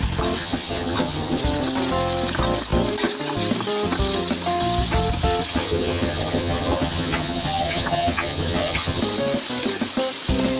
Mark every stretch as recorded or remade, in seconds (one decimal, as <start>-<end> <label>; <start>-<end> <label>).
0.0-0.4 recorded; 0.4-1.4 remade; 1.4-5.5 recorded; 5.5-9.0 remade; 9.0-10.6 recorded